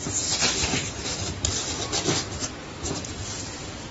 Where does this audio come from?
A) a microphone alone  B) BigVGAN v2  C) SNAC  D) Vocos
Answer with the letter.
A